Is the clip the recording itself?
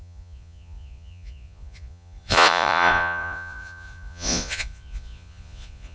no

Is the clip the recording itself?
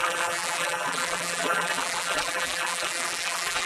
no